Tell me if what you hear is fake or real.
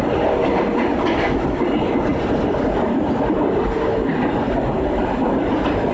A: real